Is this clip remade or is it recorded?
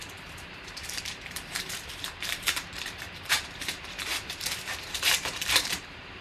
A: remade